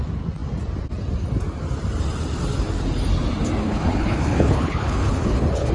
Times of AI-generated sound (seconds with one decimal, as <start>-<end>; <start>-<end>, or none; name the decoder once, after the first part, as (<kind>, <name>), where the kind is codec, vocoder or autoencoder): 3.6-5.7 (codec, HILCodec)